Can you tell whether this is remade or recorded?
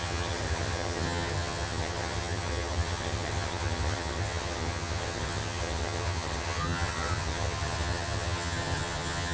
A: remade